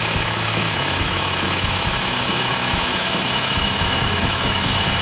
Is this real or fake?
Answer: fake